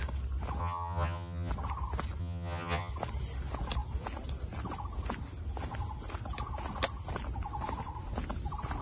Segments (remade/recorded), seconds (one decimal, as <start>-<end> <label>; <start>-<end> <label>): 0.0-0.6 recorded; 0.6-1.5 remade; 1.5-2.2 recorded; 2.2-2.9 remade; 2.9-8.8 recorded